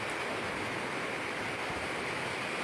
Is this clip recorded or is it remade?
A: recorded